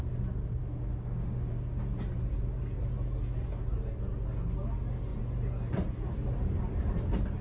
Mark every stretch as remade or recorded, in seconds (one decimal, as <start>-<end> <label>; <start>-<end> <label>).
0.0-0.6 recorded; 0.6-1.5 remade; 1.5-7.4 recorded